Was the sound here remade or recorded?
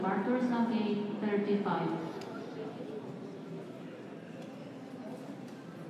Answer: recorded